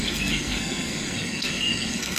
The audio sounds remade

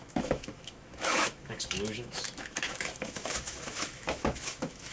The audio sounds remade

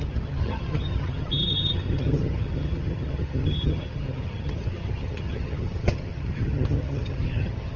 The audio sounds remade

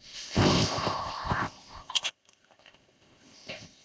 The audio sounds remade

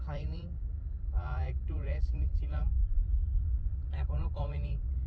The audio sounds remade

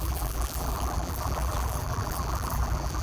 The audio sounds remade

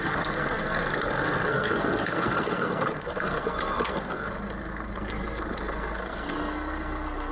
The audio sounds remade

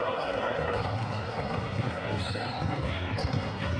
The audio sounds remade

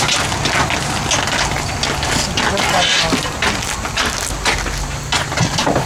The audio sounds recorded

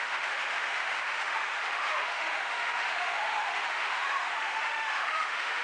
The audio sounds remade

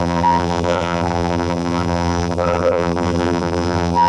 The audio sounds remade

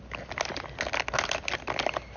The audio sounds recorded